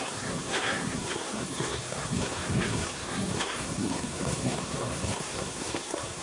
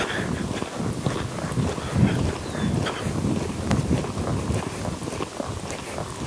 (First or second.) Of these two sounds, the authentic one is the second